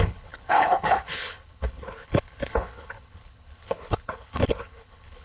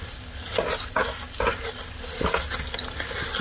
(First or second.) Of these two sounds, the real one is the second